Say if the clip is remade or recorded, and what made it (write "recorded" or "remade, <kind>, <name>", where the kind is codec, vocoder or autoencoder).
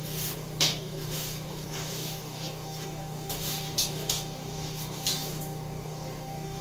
remade, codec, DAC